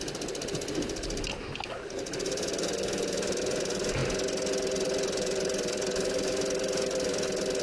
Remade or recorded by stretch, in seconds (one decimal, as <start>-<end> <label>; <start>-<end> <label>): 0.0-7.6 recorded